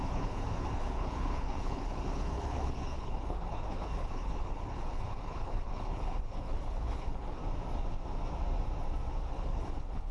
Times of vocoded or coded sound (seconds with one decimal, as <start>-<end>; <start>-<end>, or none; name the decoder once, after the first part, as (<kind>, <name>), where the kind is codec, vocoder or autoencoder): 0.0-7.4 (codec, HILCodec); 9.1-10.1

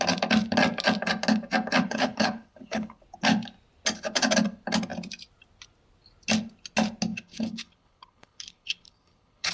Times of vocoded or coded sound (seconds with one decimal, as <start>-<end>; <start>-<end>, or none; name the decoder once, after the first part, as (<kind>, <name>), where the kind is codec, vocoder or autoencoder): 1.8-3.0 (codec, HILCodec); 7.1-9.5

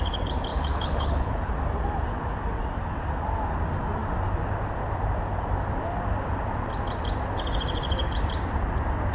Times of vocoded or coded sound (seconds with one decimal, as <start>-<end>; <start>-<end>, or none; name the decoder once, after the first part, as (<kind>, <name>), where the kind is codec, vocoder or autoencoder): 0.5-1.5 (codec, HILCodec)

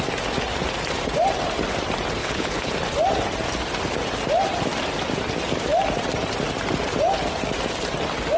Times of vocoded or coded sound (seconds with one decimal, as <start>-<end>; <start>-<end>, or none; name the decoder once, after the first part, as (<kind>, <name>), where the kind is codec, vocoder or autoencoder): 2.2-2.7 (codec, HILCodec)

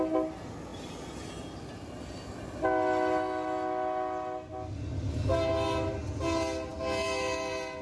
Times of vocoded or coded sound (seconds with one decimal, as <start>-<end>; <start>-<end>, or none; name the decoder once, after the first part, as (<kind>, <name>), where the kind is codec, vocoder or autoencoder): none